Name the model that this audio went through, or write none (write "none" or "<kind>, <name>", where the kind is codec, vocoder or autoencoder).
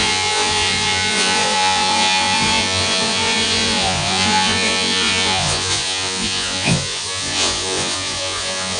vocoder, Vocos